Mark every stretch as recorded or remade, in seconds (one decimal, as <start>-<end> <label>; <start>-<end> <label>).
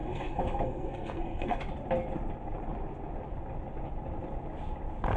0.0-1.6 remade; 1.6-5.2 recorded